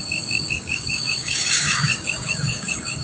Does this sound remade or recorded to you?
remade